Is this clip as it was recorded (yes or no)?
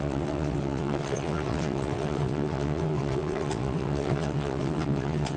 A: no